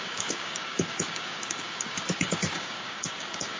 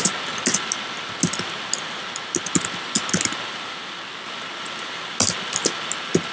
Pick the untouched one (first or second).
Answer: second